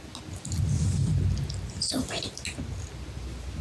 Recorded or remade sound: recorded